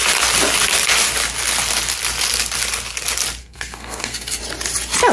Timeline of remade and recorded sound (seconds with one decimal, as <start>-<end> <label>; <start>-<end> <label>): 0.0-3.4 recorded; 3.4-4.4 remade; 4.4-5.1 recorded